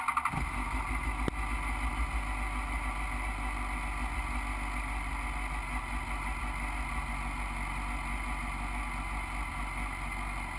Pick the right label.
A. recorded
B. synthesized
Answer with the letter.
A